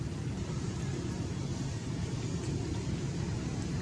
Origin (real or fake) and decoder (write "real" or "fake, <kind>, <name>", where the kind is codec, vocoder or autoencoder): real